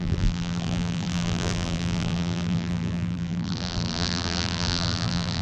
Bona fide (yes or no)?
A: no